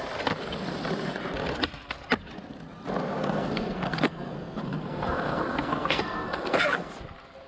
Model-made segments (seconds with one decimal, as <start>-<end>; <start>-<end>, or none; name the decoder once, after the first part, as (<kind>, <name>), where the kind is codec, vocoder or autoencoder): 3.1-6.9 (codec, SNAC)